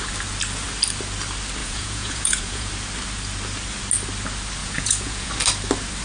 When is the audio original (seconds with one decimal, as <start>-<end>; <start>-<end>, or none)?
0.0-1.6; 2.7-4.6; 5.3-6.0